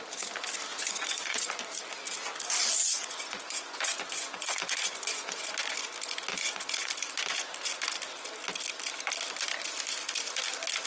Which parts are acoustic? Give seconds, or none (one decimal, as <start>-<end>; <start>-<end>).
0.0-0.7; 1.4-2.9; 5.5-6.3; 6.9-10.9